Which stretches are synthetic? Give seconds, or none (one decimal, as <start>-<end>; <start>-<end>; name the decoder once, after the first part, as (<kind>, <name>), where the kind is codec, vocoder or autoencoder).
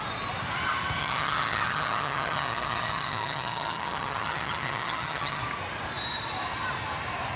1.0-5.4 (vocoder, HiFi-GAN)